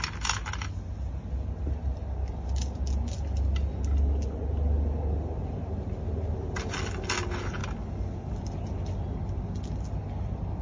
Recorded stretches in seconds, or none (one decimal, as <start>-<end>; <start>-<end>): 0.0-10.6